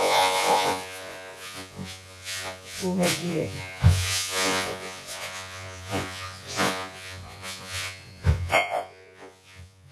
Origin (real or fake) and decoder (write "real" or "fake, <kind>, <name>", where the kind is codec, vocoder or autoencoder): fake, vocoder, Vocos